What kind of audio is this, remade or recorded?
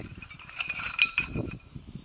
remade